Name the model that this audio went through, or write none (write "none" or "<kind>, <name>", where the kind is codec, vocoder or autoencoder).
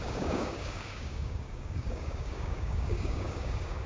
codec, DAC